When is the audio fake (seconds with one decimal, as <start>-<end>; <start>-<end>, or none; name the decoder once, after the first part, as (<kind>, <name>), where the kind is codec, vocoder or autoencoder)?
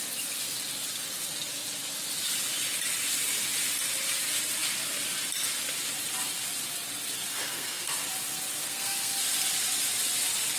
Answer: 7.2-7.9 (codec, SNAC); 8.6-9.2